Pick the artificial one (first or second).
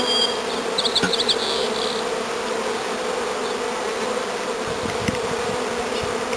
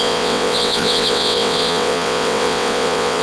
second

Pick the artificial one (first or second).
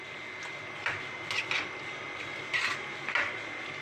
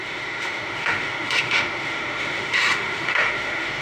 second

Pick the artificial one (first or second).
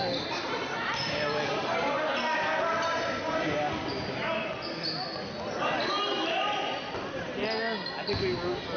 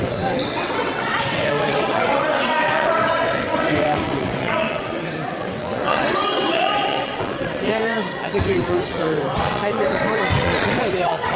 second